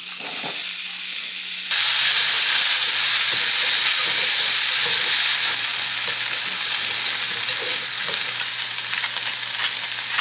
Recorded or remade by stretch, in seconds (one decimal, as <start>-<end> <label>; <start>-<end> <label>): 0.0-10.2 recorded